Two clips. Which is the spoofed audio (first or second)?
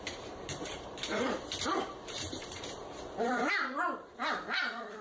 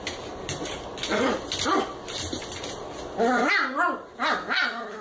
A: first